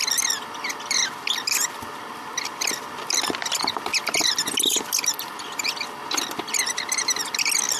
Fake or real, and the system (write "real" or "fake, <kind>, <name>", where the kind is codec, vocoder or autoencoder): real